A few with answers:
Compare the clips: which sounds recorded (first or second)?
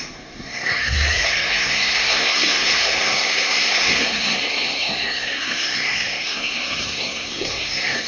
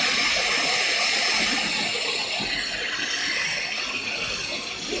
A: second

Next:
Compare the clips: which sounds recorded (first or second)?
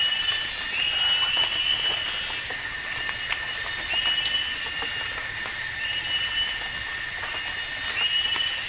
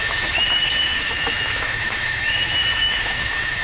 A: first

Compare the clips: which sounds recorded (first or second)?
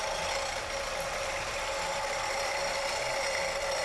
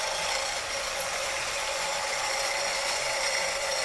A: first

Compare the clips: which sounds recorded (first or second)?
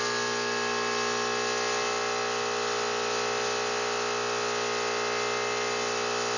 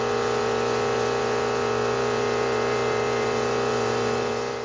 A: first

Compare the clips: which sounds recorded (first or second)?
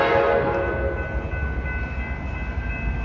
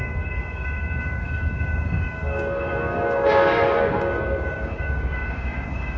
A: first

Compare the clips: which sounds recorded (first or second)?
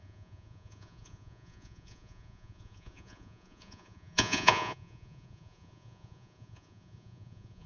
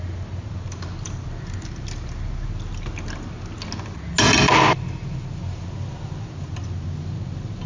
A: second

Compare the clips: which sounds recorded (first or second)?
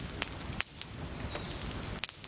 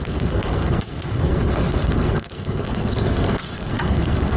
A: first